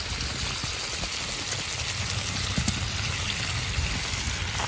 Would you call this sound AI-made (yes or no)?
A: no